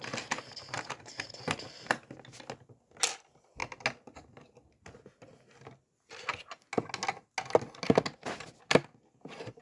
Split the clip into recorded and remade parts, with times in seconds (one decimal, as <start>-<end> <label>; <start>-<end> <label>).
0.0-9.6 recorded